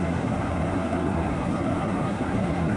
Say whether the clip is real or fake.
fake